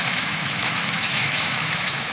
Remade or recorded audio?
remade